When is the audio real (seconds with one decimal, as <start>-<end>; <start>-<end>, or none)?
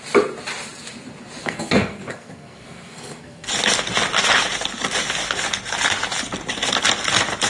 0.0-1.4; 3.5-7.5